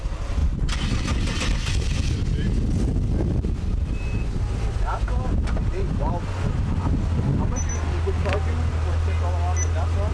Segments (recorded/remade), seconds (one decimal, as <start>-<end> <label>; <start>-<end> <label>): 0.0-3.3 recorded; 3.3-3.9 remade; 3.9-10.1 recorded